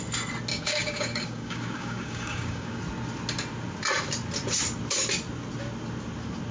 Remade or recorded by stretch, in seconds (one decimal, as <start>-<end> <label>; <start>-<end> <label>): 0.0-0.5 recorded; 0.5-2.8 remade; 2.8-6.5 recorded